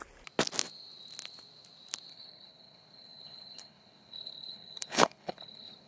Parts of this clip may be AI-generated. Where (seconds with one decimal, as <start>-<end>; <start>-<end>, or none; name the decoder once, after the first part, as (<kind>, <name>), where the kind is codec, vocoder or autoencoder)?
2.1-5.9 (codec, HILCodec)

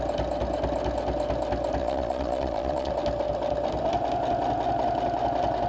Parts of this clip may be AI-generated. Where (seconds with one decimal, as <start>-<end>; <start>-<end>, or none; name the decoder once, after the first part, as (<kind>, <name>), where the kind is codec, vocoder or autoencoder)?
1.8-2.9 (vocoder, Vocos)

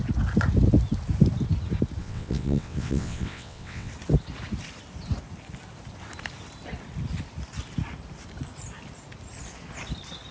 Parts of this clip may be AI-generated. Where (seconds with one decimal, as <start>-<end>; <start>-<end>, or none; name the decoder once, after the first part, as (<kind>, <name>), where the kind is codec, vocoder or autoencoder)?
2.0-3.9 (vocoder, WaveNeXt)

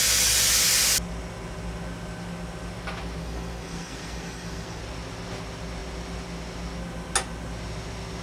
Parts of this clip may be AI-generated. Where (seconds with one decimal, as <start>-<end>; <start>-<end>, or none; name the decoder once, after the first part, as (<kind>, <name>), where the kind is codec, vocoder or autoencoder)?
3.2-4.8 (codec, SNAC)

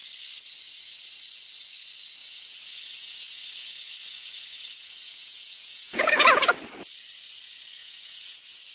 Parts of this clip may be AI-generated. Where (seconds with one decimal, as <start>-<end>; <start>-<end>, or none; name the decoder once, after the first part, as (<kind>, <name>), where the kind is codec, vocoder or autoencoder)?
2.2-6.5 (vocoder, Vocos); 7.8-8.7

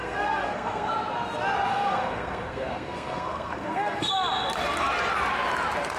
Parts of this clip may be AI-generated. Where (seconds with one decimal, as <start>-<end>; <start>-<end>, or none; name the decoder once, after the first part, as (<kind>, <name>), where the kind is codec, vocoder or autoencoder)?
0.0-0.9 (codec, SNAC); 1.7-4.1